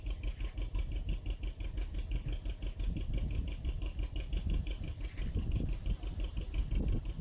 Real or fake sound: real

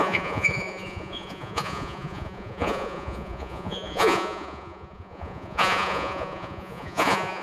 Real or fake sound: fake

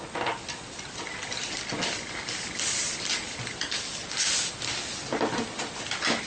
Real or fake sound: real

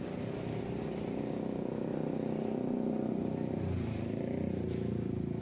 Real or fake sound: real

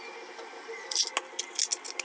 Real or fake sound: real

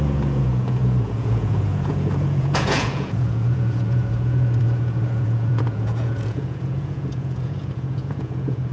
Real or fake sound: fake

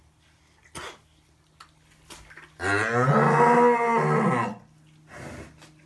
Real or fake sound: real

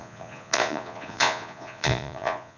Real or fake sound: fake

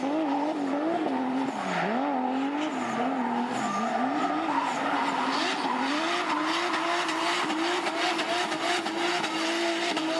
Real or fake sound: real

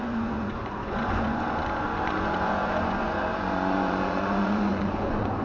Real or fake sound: fake